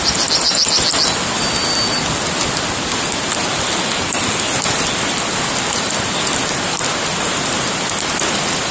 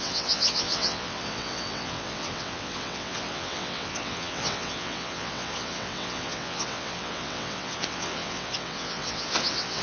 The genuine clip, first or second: first